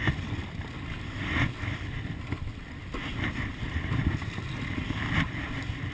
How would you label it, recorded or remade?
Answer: recorded